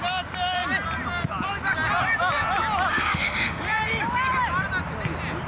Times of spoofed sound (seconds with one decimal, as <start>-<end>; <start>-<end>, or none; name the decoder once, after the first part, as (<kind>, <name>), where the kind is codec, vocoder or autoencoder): 2.9-3.6 (autoencoder, DAC-VAE)